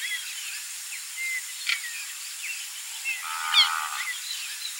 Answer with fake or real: real